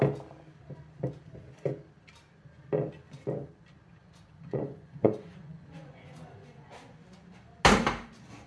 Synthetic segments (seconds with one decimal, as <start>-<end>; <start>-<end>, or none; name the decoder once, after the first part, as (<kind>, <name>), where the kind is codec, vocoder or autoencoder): 4.0-6.7 (vocoder, Vocos)